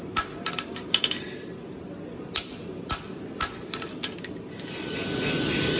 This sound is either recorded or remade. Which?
recorded